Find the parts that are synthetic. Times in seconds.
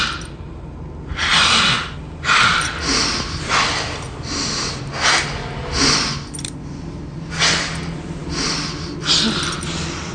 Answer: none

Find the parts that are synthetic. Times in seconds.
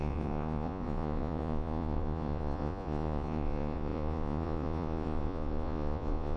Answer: 0.0-6.4 (vocoder, Vocos)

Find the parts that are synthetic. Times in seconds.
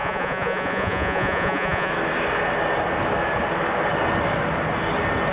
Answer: 0.0-1.9 (vocoder, Vocos)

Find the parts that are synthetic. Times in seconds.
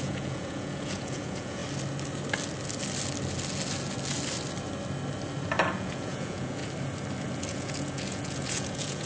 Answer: 0.0-1.6 (vocoder, Vocos); 5.7-6.6; 7.5-9.1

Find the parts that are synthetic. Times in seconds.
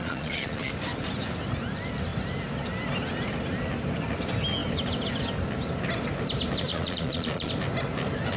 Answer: 0.0-0.7 (vocoder, Vocos); 6.7-7.5